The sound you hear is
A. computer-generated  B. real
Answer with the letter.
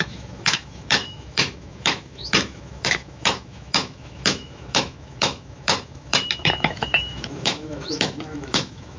A